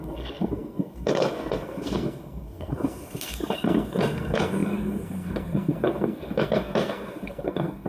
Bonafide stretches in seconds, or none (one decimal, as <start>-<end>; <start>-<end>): none